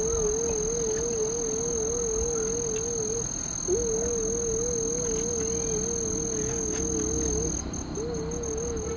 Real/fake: real